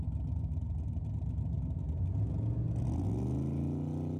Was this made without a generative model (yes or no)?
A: yes